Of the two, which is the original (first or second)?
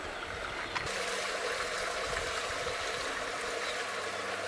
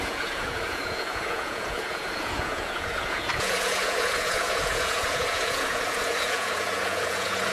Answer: first